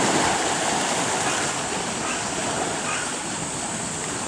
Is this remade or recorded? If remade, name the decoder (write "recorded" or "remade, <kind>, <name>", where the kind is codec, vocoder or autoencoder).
recorded